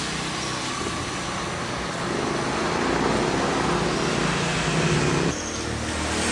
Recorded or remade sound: recorded